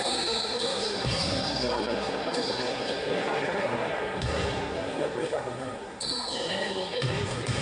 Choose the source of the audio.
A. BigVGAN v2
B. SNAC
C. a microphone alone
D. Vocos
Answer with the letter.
B